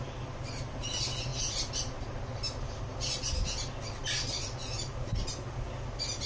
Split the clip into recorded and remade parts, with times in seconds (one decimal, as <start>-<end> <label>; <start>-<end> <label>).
0.0-6.3 recorded